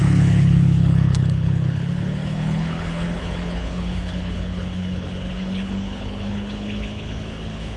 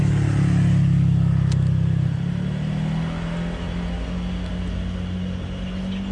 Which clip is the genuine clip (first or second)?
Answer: second